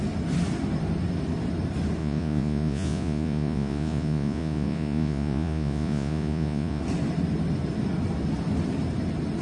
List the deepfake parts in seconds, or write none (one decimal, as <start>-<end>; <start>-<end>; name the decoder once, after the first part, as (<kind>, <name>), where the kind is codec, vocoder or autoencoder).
2.0-6.8 (vocoder, Vocos)